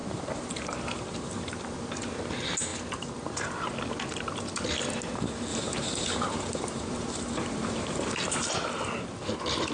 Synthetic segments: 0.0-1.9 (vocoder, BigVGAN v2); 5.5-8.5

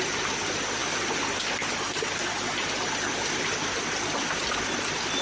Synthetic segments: none

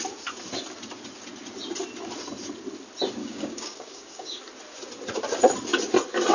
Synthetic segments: 3.2-4.4 (codec, DAC)